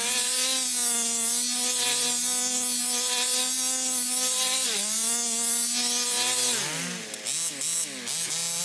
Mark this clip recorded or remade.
recorded